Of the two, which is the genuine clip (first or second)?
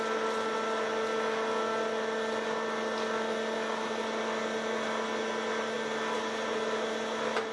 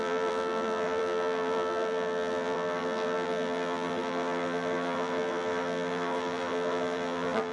first